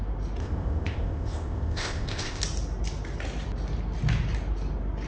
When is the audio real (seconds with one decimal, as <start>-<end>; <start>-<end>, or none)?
0.0-0.4; 2.4-5.1